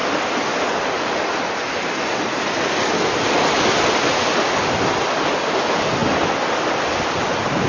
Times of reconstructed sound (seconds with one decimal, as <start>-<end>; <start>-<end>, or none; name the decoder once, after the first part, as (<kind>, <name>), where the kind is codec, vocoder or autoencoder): none